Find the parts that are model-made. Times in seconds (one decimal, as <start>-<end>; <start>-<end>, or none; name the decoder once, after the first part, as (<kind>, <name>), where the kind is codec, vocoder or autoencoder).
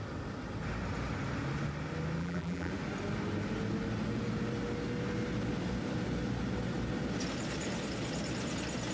2.2-2.7 (vocoder, BigVGAN v2)